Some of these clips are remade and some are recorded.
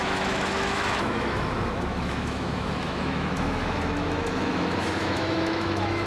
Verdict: remade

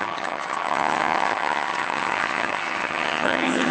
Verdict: remade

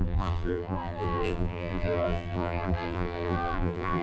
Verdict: remade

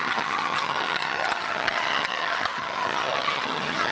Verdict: remade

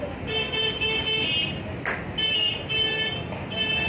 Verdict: recorded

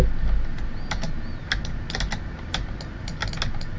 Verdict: recorded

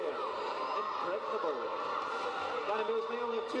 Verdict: recorded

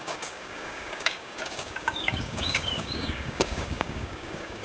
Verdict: remade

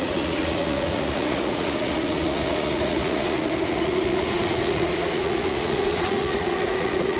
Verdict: remade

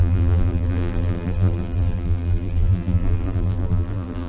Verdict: remade